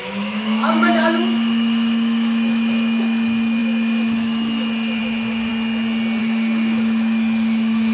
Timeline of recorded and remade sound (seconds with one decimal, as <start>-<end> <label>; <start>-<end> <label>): 0.0-5.5 remade; 5.5-6.2 recorded; 6.2-7.9 remade